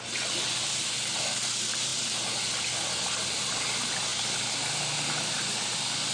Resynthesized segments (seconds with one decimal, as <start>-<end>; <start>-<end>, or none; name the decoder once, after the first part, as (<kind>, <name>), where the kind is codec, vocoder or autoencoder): none